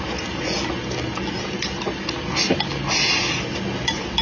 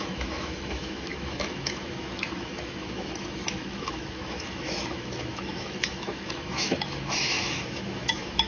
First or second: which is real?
first